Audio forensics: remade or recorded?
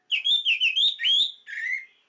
recorded